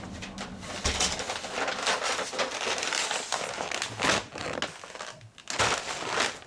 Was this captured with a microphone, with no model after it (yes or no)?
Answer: yes